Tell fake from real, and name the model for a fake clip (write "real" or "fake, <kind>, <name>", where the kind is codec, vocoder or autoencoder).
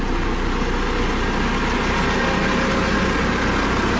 real